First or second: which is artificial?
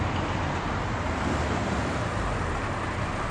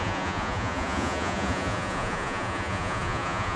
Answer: second